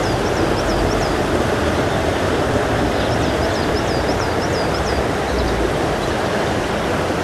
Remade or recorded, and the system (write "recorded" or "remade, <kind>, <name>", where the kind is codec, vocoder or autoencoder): recorded